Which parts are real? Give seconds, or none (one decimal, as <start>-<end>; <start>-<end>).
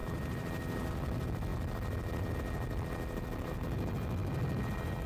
0.0-5.1